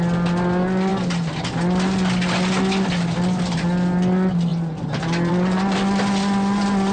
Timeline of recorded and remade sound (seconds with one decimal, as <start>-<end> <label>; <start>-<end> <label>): 0.0-0.9 recorded; 0.9-1.4 remade; 1.4-4.5 recorded; 4.5-5.3 remade; 5.3-6.9 recorded